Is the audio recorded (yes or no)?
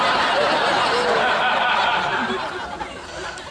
yes